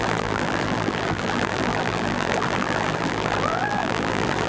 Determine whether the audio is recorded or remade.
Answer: remade